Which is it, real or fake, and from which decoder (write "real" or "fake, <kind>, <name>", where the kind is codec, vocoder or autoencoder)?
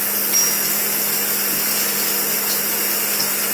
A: real